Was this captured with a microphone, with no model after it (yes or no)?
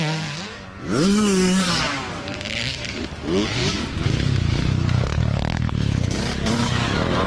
no